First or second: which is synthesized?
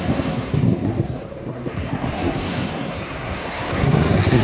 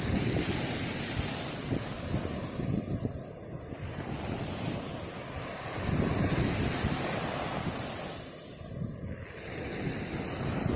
first